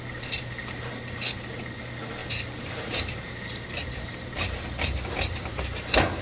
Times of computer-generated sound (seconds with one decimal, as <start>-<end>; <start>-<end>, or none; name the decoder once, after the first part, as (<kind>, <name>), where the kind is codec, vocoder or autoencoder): 2.2-6.2 (vocoder, BigVGAN v2)